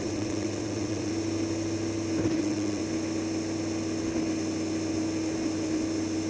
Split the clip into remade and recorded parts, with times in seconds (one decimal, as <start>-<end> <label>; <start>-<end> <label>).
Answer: 0.0-1.1 remade; 1.1-2.4 recorded; 2.4-2.8 remade; 2.8-6.3 recorded